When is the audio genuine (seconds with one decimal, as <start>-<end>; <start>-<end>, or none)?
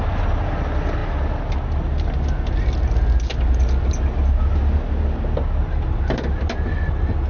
0.0-7.3